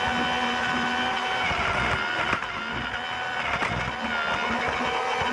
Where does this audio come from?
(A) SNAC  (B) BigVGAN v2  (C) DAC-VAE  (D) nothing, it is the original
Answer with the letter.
D